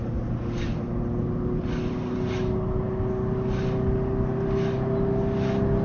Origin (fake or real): real